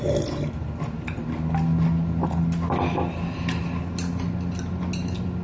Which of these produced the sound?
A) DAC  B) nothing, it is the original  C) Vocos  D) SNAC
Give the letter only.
B